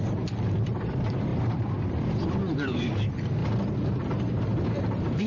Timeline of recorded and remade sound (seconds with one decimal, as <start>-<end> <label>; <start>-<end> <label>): 0.0-5.3 remade